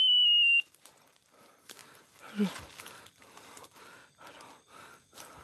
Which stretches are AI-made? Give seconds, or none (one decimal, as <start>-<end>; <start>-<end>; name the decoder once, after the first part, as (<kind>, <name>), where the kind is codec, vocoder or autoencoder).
none